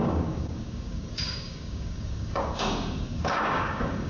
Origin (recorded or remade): remade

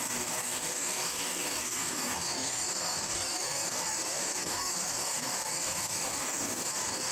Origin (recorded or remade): remade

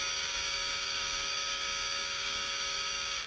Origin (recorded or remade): remade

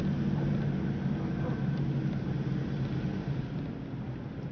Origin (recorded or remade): recorded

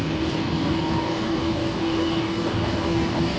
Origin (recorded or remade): remade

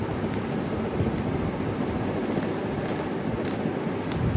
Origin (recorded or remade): recorded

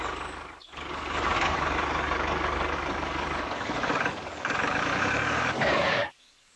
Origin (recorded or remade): remade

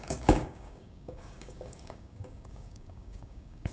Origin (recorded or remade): remade